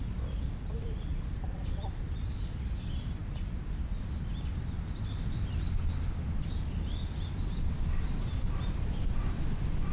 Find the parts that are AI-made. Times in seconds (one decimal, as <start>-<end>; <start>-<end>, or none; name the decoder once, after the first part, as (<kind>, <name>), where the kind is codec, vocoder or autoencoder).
0.0-3.2 (vocoder, BigVGAN v2); 4.0-9.9